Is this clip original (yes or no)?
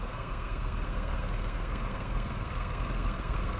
no